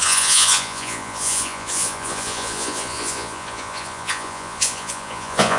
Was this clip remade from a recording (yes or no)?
yes